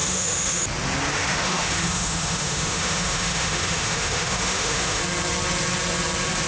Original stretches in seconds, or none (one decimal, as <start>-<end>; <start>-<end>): 0.6-1.1; 5.0-6.5